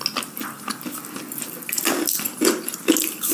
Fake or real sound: real